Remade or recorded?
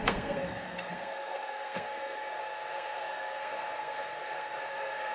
remade